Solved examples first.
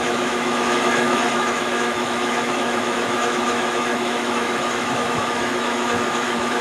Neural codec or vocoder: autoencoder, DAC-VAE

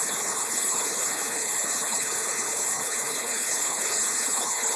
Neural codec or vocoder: codec, HILCodec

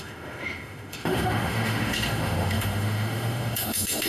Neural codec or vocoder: autoencoder, DAC-VAE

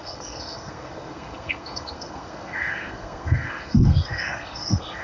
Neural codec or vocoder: codec, SNAC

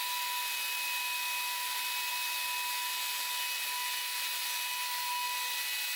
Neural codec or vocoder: none